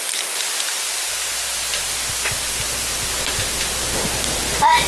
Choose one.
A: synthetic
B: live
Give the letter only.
B